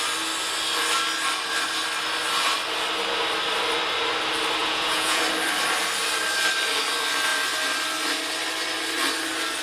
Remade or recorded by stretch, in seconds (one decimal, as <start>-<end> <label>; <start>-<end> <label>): 0.0-4.6 recorded; 4.6-5.2 remade; 5.2-9.6 recorded